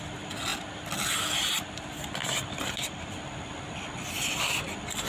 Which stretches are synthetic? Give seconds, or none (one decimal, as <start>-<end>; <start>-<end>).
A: none